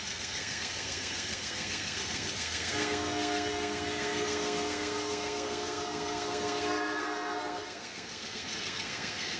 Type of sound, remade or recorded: remade